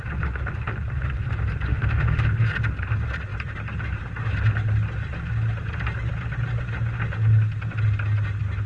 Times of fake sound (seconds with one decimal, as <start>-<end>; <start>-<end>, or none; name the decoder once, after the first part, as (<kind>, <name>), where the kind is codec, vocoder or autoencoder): 1.7-2.3 (autoencoder, DAC-VAE)